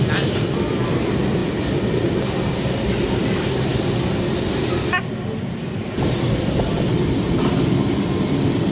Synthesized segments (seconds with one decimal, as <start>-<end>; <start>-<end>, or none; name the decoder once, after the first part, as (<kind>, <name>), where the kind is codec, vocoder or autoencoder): none